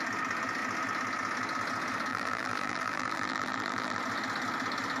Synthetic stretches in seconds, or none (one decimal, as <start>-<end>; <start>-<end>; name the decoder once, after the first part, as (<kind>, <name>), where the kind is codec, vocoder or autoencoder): 2.1-4.0 (vocoder, BigVGAN v2)